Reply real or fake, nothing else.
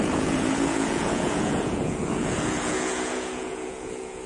fake